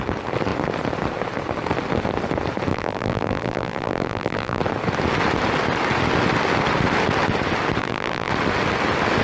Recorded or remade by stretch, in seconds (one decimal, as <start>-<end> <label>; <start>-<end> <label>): 0.0-2.7 recorded; 2.7-4.6 remade; 4.6-7.8 recorded; 7.8-8.3 remade; 8.3-9.2 recorded